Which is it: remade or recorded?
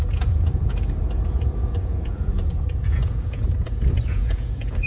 remade